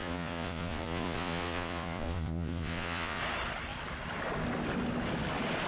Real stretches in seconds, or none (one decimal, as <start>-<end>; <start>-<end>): 3.2-5.7